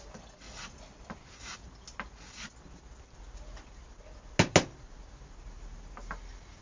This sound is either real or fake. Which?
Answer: real